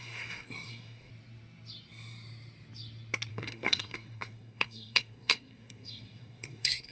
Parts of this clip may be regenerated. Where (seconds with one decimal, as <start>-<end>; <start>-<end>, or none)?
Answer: 0.0-1.1; 3.3-6.9